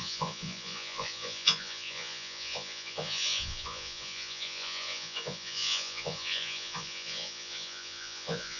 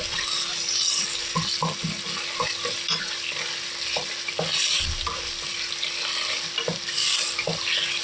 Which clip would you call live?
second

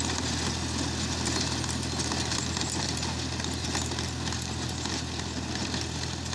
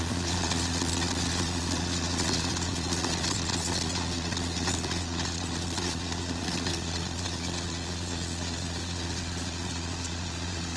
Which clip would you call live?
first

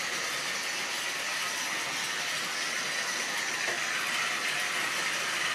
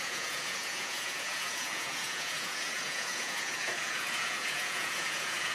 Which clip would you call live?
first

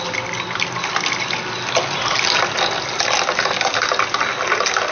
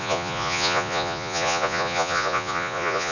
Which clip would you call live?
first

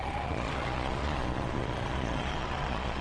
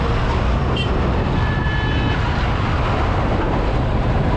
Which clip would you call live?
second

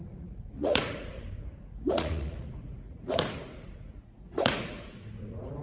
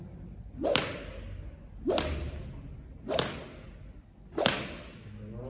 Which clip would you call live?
second